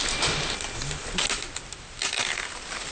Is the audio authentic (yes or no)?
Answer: yes